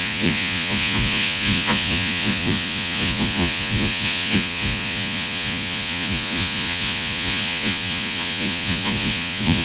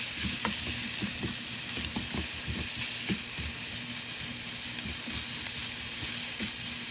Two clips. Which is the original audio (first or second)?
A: second